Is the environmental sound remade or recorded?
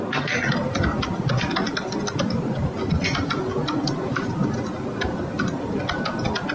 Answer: recorded